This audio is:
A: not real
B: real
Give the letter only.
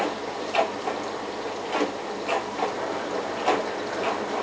B